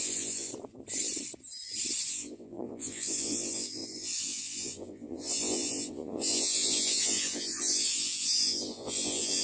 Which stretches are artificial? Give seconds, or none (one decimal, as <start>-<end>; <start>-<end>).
0.0-0.5; 2.1-9.4